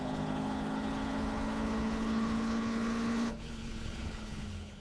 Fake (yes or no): yes